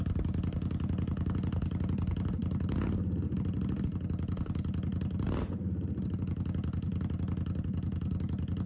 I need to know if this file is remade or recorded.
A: recorded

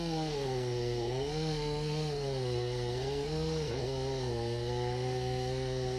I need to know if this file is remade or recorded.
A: remade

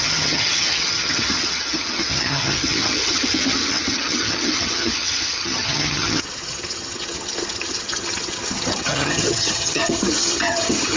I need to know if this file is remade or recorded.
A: remade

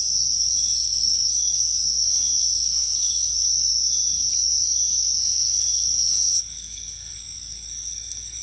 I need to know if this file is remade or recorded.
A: remade